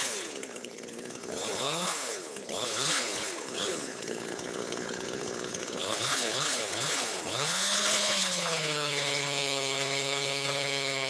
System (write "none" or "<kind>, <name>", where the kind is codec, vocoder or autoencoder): codec, HILCodec